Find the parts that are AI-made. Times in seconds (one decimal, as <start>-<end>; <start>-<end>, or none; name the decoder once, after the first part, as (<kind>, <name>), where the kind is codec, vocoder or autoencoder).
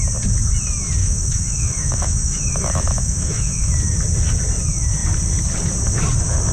1.0-3.7 (autoencoder, DAC-VAE)